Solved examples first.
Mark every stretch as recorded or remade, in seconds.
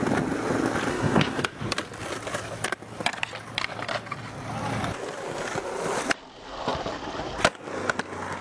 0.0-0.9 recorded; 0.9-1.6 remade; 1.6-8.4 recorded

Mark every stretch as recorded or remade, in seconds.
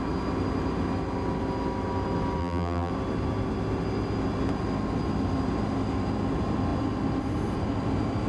0.0-2.4 recorded; 2.4-2.9 remade; 2.9-8.3 recorded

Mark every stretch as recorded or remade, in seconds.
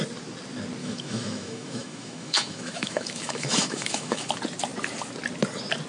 0.0-0.8 recorded; 0.8-4.3 remade; 4.3-5.9 recorded